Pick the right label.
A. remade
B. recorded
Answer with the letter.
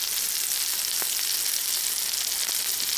B